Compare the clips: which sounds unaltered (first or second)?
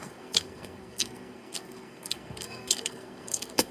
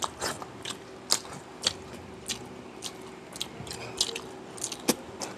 second